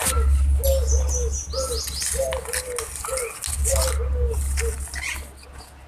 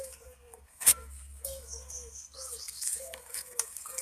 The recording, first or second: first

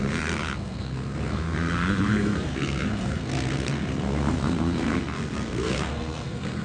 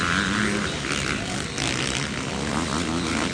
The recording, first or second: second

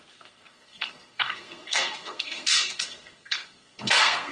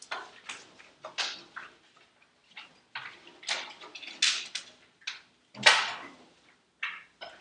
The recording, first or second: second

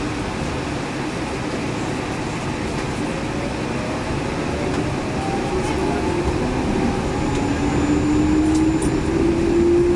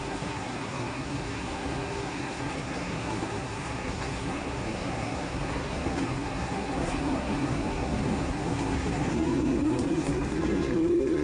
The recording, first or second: first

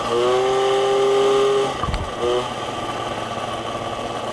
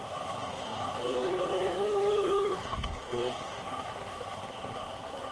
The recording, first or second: first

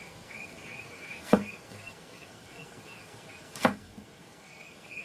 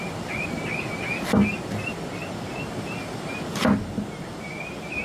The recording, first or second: second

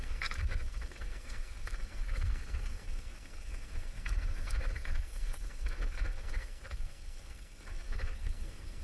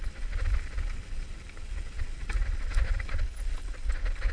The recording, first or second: second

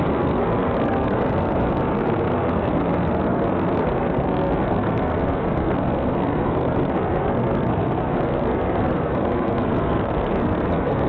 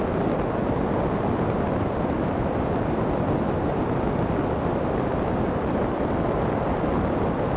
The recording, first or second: second